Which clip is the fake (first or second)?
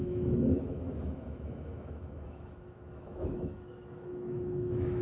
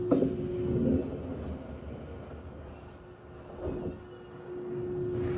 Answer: first